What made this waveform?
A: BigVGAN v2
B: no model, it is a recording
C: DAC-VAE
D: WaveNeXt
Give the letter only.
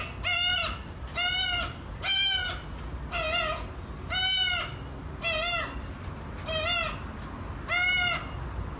B